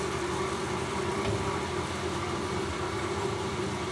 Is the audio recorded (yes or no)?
yes